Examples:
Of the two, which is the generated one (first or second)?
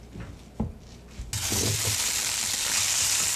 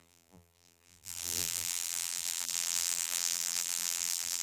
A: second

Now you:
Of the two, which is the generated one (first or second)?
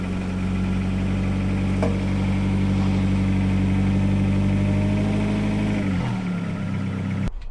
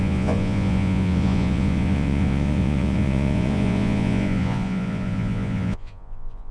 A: second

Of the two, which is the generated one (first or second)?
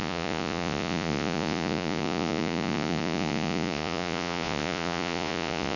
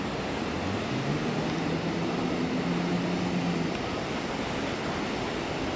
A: first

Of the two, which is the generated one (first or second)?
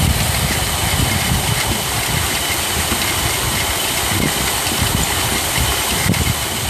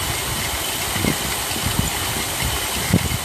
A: first